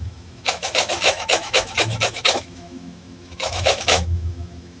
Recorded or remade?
remade